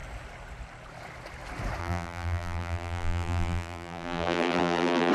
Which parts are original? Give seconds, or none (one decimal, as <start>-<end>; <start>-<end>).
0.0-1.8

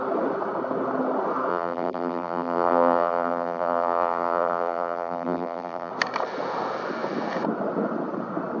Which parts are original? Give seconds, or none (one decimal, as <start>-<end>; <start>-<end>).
0.0-1.5; 5.9-8.6

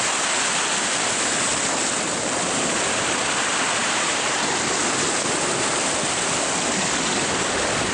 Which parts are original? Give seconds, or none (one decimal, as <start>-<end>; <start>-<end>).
0.0-3.8; 4.4-7.9